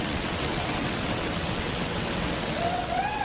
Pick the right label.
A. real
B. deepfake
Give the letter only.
B